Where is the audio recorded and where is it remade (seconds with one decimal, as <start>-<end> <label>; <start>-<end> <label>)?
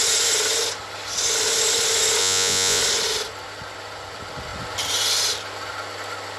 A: 0.0-2.2 recorded; 2.2-2.8 remade; 2.8-6.4 recorded